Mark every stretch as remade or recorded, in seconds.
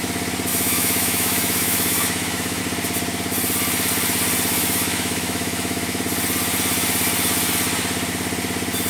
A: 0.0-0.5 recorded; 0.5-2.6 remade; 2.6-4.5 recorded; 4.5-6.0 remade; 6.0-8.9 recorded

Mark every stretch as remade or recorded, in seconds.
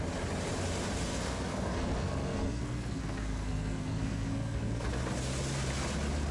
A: 0.0-1.1 recorded; 1.1-4.9 remade; 4.9-6.3 recorded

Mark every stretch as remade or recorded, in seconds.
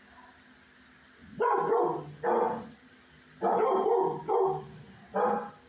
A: 0.0-5.7 recorded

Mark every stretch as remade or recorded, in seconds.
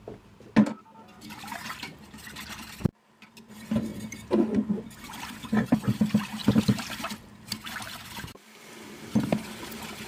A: 0.0-2.9 recorded; 2.9-3.5 remade; 3.5-6.4 recorded; 6.4-8.7 remade; 8.7-10.1 recorded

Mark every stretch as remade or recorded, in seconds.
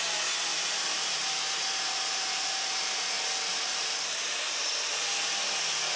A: 0.0-0.5 recorded; 0.5-3.1 remade; 3.1-3.5 recorded; 3.5-4.7 remade; 4.7-6.0 recorded